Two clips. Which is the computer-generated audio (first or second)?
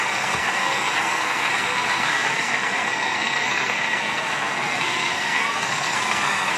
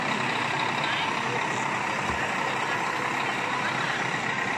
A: first